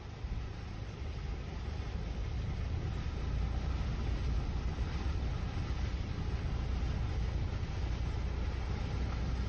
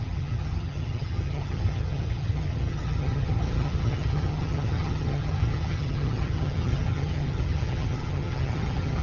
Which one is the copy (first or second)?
second